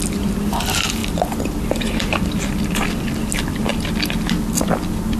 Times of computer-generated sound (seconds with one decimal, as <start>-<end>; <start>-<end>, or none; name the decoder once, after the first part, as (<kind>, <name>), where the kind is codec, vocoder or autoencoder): none